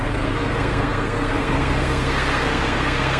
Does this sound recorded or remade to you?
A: remade